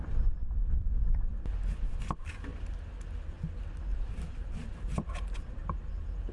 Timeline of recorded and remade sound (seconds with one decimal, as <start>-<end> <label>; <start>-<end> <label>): 0.0-3.9 recorded; 3.9-5.6 remade; 5.6-6.3 recorded

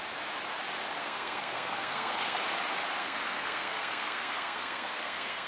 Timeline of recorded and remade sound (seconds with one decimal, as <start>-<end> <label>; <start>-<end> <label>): 0.0-1.0 recorded; 1.0-2.4 remade; 2.4-3.0 recorded; 3.0-5.5 remade